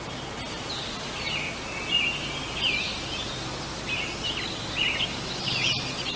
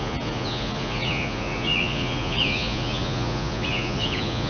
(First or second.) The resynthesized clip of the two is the second